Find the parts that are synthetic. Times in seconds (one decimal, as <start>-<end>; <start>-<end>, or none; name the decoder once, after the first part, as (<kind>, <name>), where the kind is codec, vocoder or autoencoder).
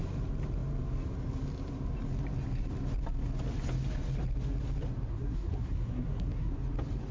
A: 5.1-6.5 (codec, SNAC)